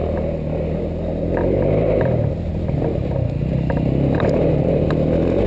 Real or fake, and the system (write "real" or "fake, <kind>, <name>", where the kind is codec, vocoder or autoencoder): real